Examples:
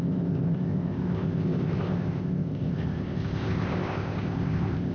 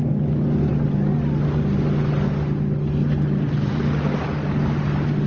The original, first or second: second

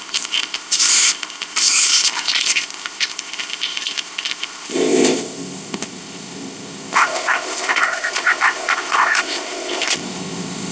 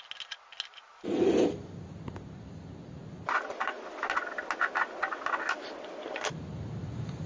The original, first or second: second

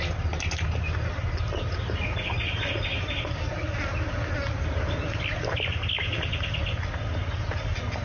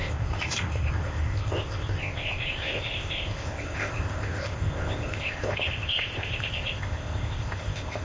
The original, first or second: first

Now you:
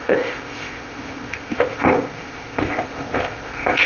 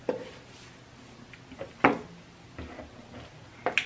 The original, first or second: second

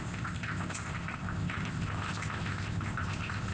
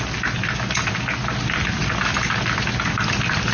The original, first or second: second